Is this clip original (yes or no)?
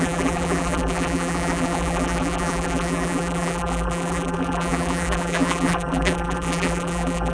no